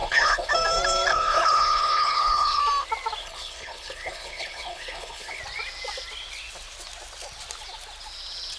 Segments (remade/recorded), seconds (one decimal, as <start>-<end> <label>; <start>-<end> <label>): 0.0-0.5 remade; 0.5-1.1 recorded; 1.1-2.6 remade; 2.6-3.2 recorded; 3.2-5.4 remade; 5.4-8.6 recorded